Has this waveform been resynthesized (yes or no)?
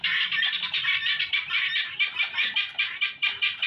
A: no